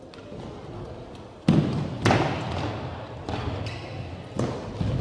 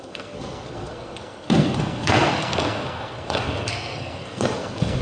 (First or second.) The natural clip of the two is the first